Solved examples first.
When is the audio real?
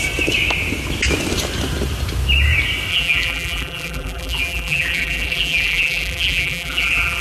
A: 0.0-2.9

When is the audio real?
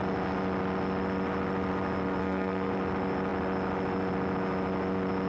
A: 0.0-2.2; 2.7-5.3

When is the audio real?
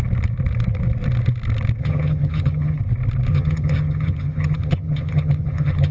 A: 0.0-1.8; 2.8-3.3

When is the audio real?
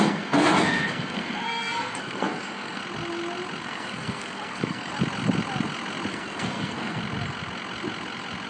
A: 2.8-3.6; 4.9-6.1; 7.0-8.5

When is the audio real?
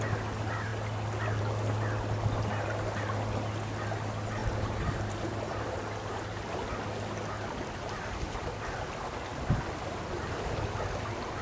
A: 0.0-4.4; 5.8-11.4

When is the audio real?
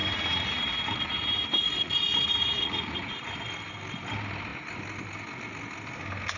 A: 3.3-6.4